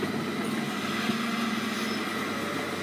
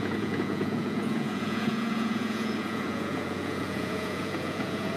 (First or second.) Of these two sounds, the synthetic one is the second